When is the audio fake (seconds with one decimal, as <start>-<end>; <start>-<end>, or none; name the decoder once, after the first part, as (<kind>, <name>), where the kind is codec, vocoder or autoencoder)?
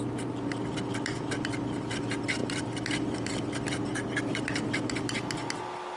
none